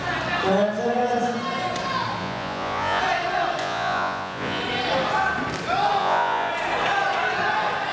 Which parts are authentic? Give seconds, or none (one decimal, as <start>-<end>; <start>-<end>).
0.0-2.2; 3.0-3.6; 4.6-6.0; 6.5-7.9